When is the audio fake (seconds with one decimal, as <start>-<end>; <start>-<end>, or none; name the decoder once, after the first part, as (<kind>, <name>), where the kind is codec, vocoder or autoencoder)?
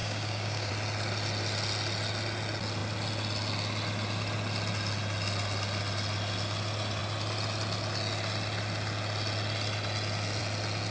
0.0-0.7 (codec, DAC)